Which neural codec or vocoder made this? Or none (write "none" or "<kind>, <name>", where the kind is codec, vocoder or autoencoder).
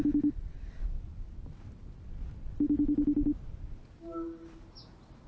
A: none